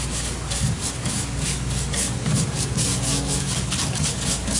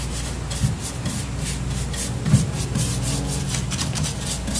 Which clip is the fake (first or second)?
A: first